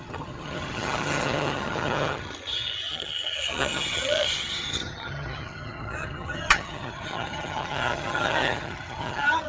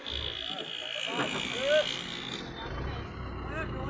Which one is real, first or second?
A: second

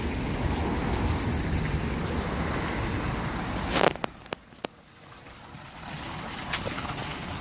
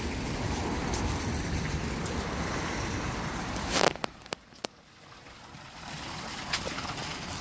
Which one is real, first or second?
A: first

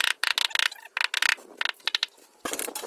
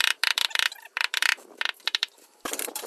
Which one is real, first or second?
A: first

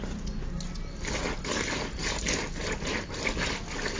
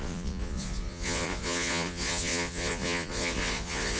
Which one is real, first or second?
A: first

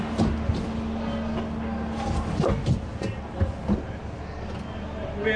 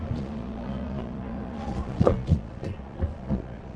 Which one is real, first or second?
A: first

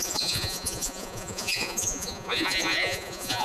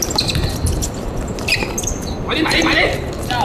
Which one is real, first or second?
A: second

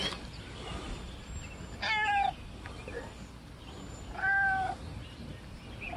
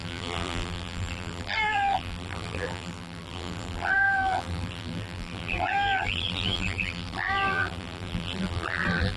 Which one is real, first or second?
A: first